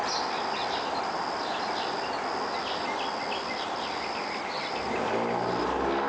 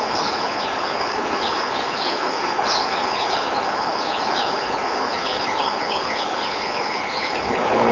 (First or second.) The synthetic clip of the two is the second